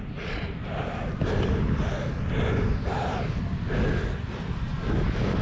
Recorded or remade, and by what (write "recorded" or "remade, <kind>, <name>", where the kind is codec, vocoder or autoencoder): recorded